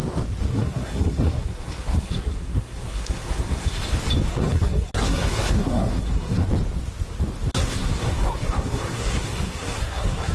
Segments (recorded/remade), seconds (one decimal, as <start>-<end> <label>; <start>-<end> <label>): 0.0-0.5 recorded; 0.5-3.8 remade; 3.8-4.3 recorded; 4.3-6.5 remade; 6.5-7.5 recorded; 7.5-10.3 remade